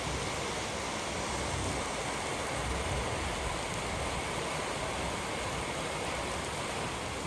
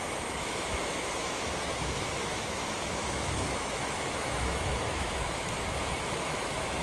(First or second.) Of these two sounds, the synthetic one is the second